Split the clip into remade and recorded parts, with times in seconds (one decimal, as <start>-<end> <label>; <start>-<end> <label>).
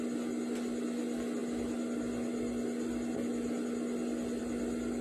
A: 0.0-5.0 recorded